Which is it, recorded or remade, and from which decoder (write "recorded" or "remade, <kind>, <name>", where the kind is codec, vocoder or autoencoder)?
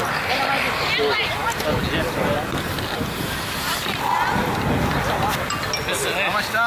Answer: recorded